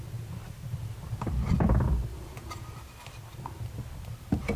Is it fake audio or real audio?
fake